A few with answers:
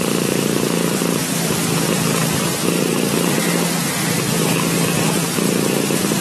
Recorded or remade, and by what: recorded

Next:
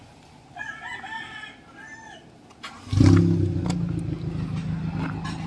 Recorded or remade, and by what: recorded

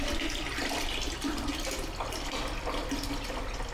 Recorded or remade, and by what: recorded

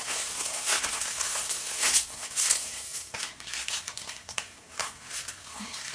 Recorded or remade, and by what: remade, codec, SNAC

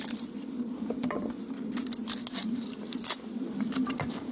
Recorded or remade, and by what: recorded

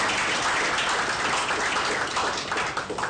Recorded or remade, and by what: recorded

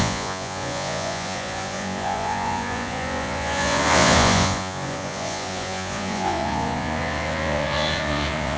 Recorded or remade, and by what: remade, vocoder, Vocos